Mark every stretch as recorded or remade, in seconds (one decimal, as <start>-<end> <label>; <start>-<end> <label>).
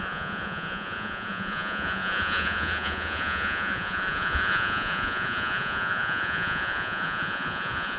0.0-8.0 remade